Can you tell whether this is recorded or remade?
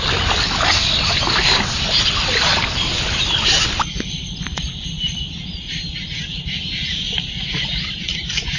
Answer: recorded